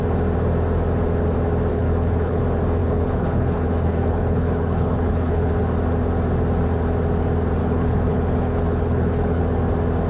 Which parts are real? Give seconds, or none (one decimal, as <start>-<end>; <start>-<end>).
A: 0.0-1.7; 2.4-2.8; 5.5-7.6; 9.4-10.1